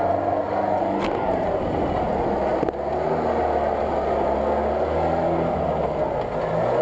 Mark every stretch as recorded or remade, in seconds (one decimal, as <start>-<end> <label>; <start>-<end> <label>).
0.0-6.8 recorded